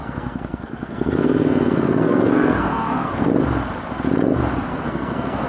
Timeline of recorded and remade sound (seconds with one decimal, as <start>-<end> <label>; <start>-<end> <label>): 0.0-3.3 remade; 3.3-4.7 recorded; 4.7-5.5 remade